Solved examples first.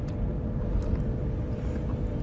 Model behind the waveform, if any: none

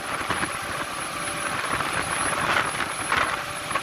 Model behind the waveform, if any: none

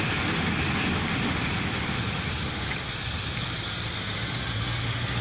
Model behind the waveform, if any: none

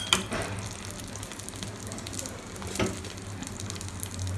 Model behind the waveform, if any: none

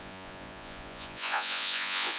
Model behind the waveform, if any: vocoder, Vocos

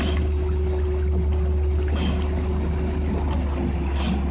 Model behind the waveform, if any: none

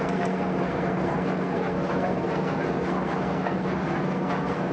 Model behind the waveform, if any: codec, SNAC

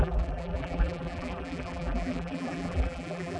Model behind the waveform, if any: vocoder, BigVGAN v2